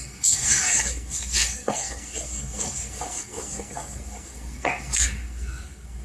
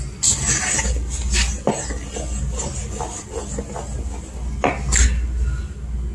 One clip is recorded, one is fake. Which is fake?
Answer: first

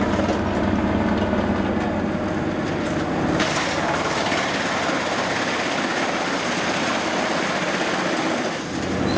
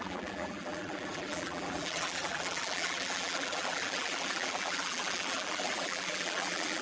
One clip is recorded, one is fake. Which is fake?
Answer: second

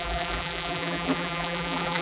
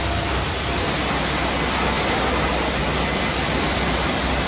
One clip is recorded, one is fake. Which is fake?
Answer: first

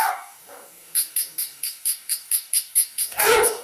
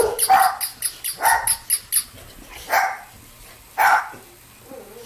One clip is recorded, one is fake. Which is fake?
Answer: first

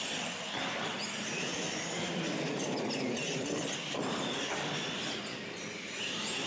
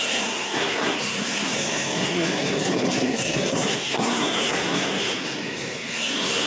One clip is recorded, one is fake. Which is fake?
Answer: second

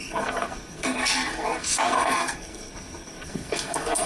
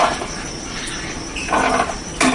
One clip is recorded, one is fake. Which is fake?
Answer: first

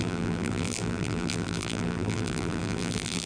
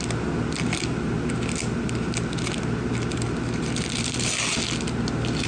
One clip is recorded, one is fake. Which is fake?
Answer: first